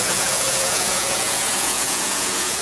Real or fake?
fake